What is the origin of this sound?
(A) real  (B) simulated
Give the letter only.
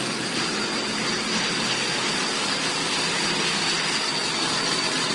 A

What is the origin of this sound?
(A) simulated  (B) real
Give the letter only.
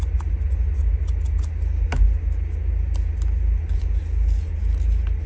B